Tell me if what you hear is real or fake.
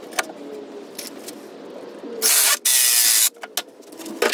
real